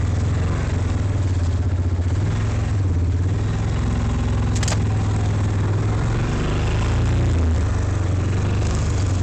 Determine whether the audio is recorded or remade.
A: recorded